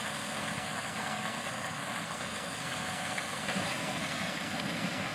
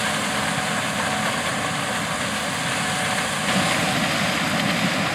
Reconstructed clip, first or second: first